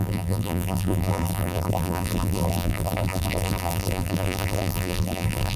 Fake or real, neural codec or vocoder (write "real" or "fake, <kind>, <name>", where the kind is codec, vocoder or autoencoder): fake, vocoder, BigVGAN v2